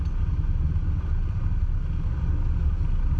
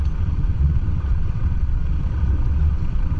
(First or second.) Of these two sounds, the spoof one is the second